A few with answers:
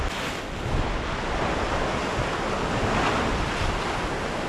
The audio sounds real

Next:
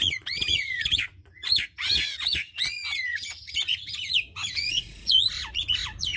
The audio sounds fake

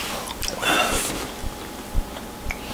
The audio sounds real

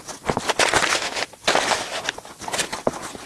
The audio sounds real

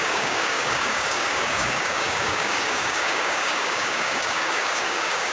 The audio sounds fake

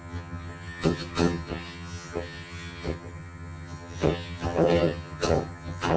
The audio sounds fake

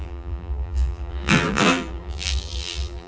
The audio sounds fake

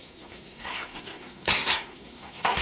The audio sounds fake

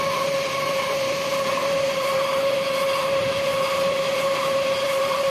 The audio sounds fake